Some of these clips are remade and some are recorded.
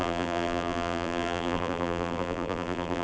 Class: remade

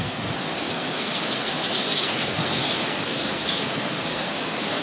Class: remade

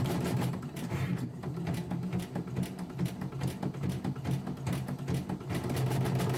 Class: recorded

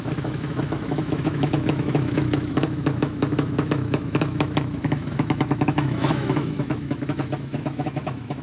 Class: remade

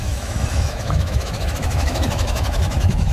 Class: remade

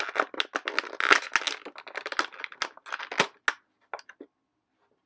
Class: recorded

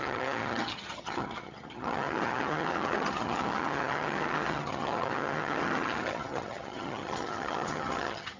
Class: remade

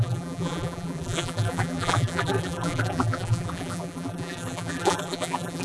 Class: remade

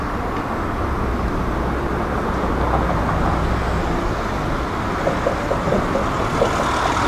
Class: recorded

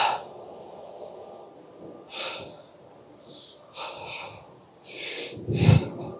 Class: recorded